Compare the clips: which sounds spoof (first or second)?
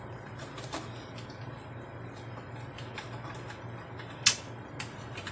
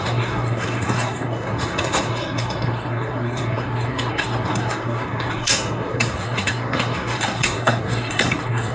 second